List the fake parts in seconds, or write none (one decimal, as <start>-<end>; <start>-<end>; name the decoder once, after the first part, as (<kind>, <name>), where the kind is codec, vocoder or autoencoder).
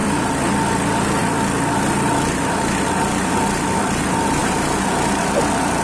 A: none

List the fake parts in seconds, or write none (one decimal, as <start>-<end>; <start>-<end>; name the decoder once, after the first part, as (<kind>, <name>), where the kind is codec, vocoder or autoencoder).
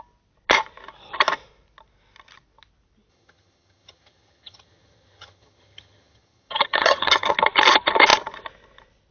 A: 3.1-7.3 (vocoder, HiFi-GAN)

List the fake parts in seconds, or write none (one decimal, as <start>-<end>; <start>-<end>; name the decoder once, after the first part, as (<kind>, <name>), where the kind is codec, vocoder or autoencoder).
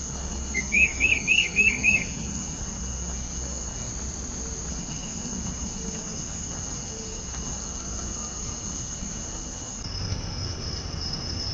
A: 0.0-3.9 (codec, SNAC); 4.7-11.5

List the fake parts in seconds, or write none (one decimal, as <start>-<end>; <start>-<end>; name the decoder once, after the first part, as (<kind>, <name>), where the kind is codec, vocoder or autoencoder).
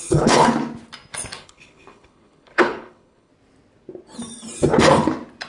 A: 0.0-0.4 (codec, HILCodec); 1.4-3.3